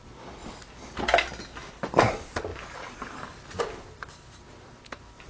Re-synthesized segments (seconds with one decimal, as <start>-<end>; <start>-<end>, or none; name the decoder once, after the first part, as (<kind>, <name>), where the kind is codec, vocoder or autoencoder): none